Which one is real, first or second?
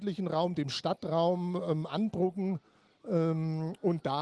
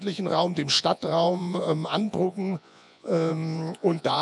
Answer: first